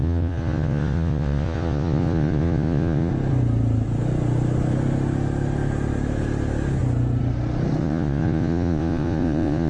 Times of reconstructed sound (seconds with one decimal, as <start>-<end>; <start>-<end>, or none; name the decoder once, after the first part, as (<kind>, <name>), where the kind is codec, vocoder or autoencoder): 0.0-3.1 (vocoder, Vocos); 7.8-9.7

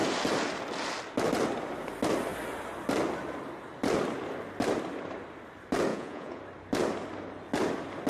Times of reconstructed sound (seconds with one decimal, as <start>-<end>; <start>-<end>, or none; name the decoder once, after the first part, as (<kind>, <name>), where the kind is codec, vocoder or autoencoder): 5.9-6.4 (vocoder, Vocos)

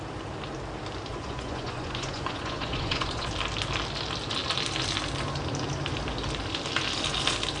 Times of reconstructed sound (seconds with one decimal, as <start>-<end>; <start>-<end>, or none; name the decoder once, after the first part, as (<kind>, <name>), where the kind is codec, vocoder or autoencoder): 1.1-3.3 (vocoder, Vocos)

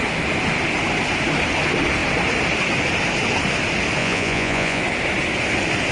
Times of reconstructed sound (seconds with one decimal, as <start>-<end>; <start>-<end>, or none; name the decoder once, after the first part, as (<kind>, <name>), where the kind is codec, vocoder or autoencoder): 4.0-4.8 (vocoder, Vocos)